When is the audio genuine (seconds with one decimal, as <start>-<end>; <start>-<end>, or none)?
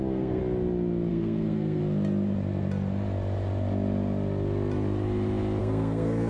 0.4-1.1; 1.8-5.6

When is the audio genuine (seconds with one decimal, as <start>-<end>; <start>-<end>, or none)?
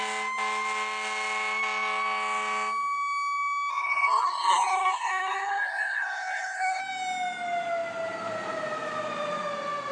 0.0-3.7; 6.8-9.9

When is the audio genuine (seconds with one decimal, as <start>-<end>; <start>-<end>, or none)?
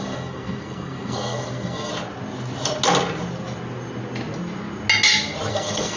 1.9-5.5